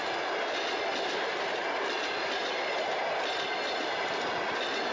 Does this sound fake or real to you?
real